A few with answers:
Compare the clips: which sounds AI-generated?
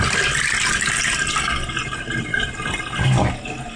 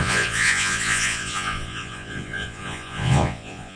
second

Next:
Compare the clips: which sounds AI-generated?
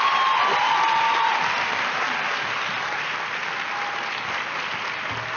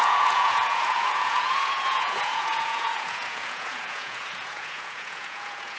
second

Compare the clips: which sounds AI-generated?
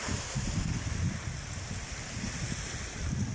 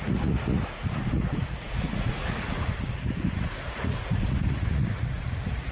second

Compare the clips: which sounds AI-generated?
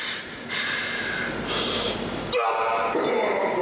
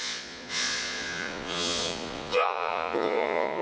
second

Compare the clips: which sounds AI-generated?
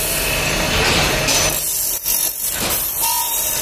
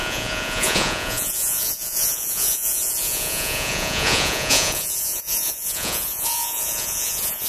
second